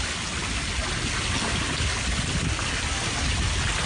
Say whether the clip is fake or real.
real